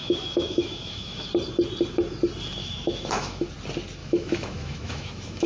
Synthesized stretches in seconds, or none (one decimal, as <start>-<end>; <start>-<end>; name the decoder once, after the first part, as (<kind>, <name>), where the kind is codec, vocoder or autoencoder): 0.0-1.3 (autoencoder, DAC-VAE); 2.6-3.5; 4.0-5.5